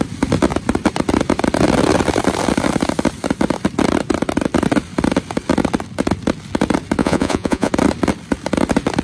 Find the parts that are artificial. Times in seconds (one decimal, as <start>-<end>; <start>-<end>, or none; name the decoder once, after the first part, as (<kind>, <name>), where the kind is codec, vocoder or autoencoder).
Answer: 7.0-7.7 (vocoder, Vocos)